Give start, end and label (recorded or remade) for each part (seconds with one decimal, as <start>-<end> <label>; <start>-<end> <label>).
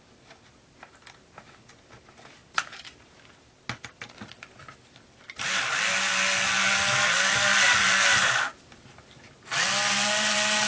0.0-10.7 recorded